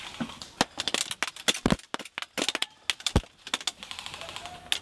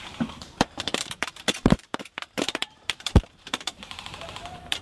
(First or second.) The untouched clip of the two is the first